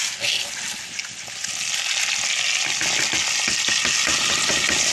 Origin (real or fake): real